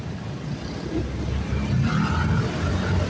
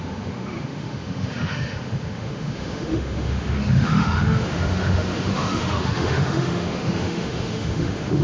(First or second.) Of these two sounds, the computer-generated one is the second